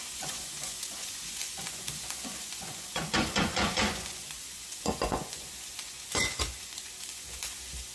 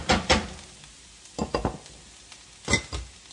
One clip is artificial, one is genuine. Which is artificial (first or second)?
first